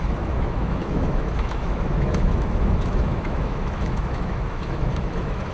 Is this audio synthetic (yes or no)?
yes